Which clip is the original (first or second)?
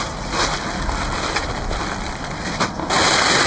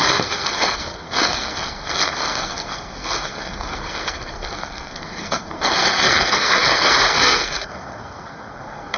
first